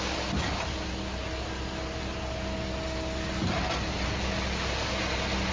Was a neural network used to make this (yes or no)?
no